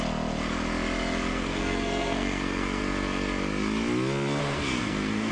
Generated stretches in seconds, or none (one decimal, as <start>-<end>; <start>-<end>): 1.3-2.8; 4.4-5.3